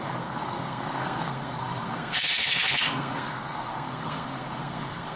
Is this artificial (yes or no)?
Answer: yes